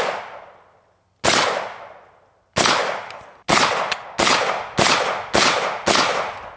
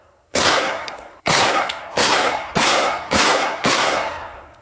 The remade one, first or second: second